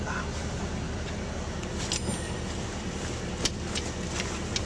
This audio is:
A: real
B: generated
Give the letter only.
A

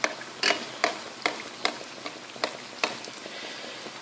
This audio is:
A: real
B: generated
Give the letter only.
A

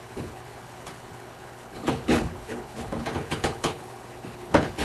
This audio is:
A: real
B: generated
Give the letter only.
B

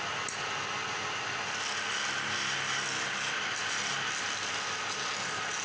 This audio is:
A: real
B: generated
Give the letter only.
A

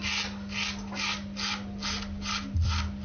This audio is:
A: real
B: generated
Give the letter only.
A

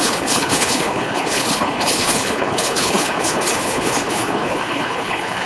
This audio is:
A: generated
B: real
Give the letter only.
A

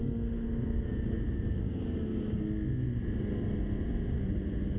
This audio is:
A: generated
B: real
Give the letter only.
B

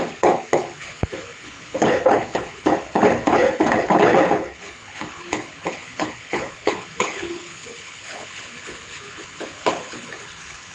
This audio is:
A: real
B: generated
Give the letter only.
B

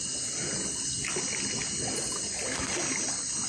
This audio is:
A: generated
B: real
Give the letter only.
B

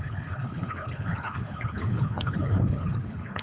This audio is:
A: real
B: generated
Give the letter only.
B